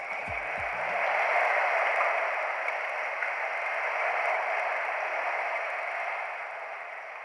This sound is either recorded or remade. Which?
recorded